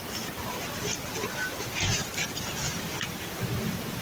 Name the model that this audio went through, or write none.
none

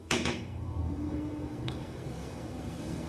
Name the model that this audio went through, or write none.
codec, SNAC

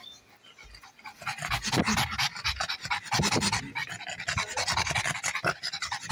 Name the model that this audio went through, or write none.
none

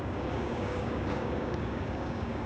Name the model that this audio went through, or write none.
codec, DAC